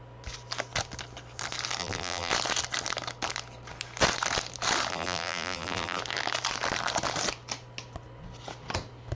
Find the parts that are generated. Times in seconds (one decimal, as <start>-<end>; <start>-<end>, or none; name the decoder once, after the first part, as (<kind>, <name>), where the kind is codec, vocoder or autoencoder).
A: 1.8-2.3 (vocoder, BigVGAN v2); 4.9-6.0